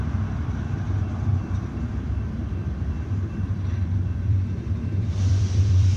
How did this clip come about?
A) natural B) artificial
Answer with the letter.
B